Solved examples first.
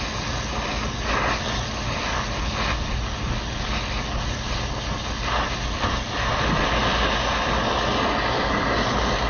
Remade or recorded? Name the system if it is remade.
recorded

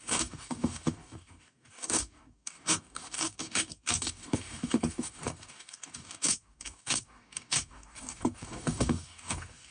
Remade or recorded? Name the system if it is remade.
remade, codec, DAC